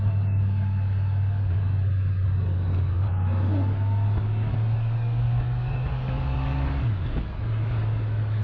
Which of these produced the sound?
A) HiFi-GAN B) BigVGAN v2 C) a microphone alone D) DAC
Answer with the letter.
D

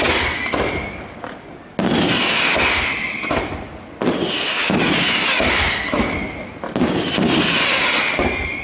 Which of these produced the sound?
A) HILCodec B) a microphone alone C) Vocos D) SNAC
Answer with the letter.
B